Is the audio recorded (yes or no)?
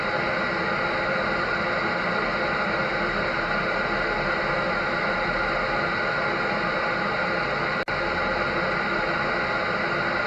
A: yes